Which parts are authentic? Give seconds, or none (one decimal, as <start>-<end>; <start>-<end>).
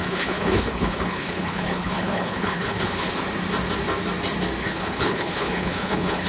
3.1-4.6